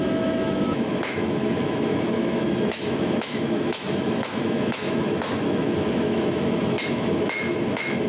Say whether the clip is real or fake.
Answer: fake